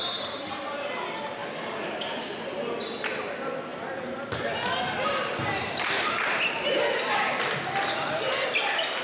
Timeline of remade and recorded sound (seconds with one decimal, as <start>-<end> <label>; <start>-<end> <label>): 0.0-9.0 recorded